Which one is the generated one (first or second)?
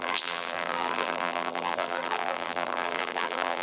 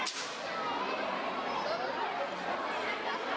first